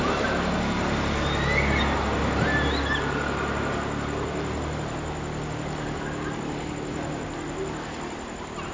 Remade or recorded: recorded